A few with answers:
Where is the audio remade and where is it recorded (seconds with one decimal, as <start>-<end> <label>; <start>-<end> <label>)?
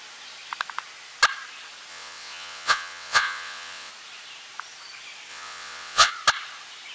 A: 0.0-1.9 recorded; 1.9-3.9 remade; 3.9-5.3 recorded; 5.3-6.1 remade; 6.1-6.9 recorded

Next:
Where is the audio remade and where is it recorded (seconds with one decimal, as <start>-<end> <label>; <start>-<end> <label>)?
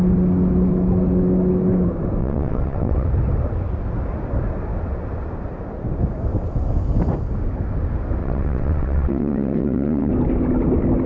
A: 0.0-2.2 recorded; 2.2-3.1 remade; 3.1-8.2 recorded; 8.2-10.1 remade; 10.1-11.1 recorded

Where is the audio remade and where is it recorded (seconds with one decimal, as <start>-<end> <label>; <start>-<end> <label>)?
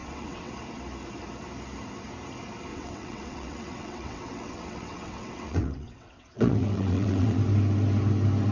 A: 0.0-0.5 remade; 0.5-2.7 recorded; 2.7-7.4 remade; 7.4-8.5 recorded